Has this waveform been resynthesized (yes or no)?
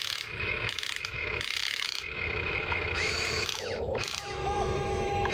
yes